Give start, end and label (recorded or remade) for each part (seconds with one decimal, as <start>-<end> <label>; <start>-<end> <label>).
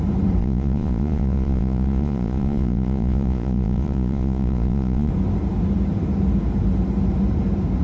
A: 0.0-0.4 recorded; 0.4-5.1 remade; 5.1-7.8 recorded